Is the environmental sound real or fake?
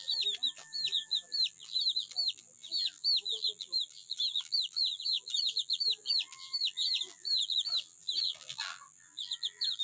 fake